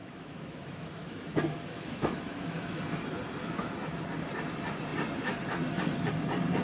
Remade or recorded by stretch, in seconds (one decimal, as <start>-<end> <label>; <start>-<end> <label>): 0.0-2.8 remade; 2.8-3.4 recorded; 3.4-4.0 remade; 4.0-6.6 recorded